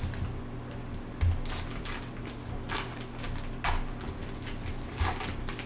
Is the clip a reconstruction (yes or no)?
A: no